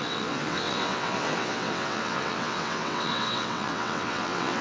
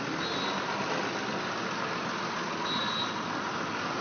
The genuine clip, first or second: second